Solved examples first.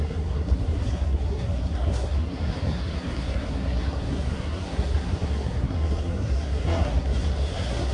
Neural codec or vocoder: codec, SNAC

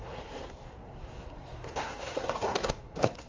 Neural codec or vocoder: codec, SNAC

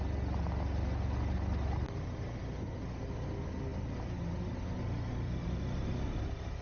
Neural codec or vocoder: none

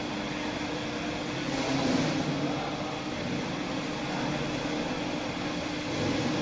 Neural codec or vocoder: none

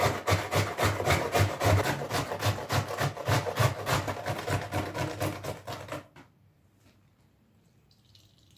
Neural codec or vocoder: none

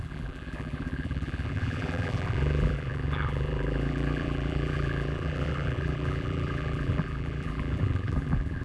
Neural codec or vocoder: vocoder, BigVGAN v2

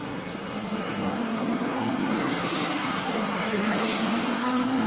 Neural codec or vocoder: codec, SNAC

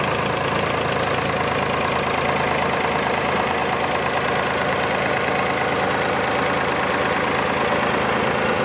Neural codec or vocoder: none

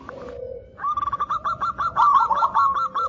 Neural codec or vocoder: none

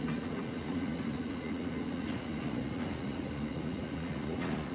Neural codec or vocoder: vocoder, Vocos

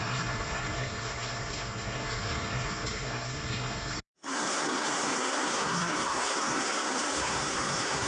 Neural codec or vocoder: codec, SNAC